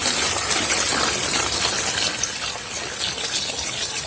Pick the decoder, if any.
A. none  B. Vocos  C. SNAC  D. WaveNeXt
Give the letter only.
A